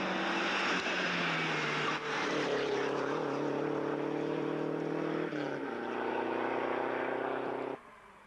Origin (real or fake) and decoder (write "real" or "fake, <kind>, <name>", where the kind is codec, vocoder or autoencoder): real